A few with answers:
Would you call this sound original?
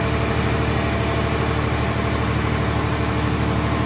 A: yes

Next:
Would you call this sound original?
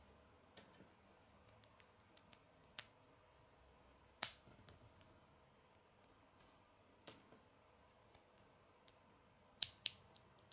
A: yes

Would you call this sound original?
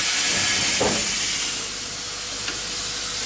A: yes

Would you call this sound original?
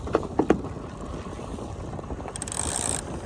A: yes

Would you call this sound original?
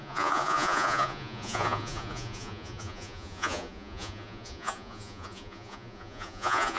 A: no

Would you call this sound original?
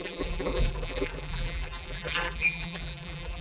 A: no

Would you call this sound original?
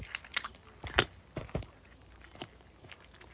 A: yes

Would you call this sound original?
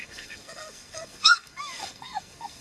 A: no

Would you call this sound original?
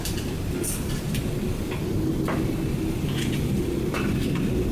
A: yes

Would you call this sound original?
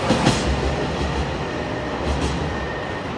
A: yes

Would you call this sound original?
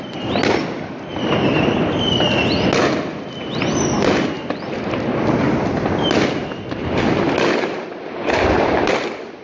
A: yes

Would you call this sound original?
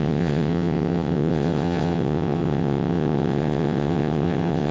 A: no